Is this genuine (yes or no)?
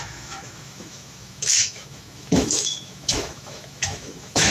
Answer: no